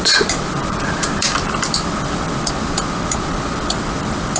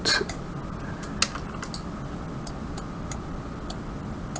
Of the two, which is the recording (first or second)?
second